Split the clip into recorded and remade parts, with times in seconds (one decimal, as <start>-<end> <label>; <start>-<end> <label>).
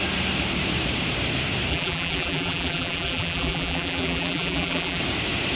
0.0-1.7 recorded; 1.7-5.0 remade; 5.0-5.6 recorded